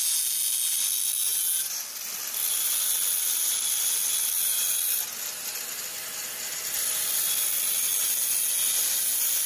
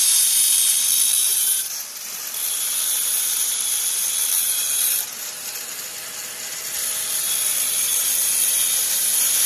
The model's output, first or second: second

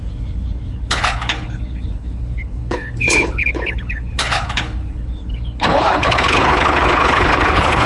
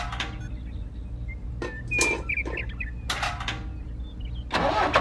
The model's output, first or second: first